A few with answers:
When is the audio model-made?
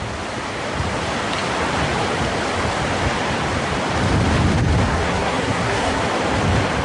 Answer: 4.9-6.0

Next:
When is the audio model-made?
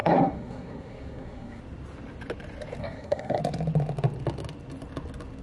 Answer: 0.0-1.6; 2.8-3.4